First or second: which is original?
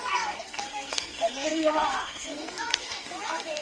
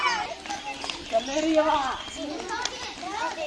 second